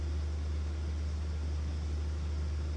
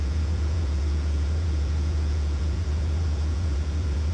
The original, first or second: first